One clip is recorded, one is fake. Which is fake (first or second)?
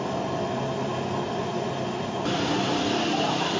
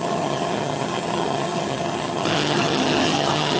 second